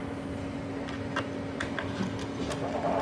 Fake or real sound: real